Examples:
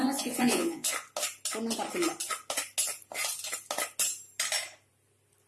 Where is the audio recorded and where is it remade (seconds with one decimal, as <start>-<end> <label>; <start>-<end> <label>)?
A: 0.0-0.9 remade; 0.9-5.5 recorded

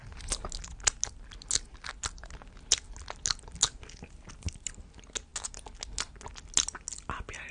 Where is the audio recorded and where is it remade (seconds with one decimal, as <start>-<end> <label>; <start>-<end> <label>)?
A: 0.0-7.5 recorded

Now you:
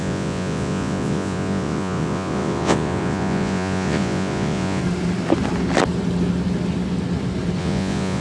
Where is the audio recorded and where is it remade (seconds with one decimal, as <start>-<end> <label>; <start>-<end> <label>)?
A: 0.0-4.8 remade; 4.8-7.6 recorded; 7.6-8.2 remade

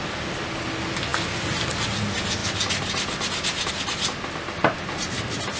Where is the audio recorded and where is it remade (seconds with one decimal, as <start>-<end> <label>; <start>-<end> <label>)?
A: 0.0-5.6 recorded